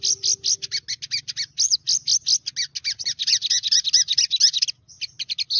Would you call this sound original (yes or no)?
yes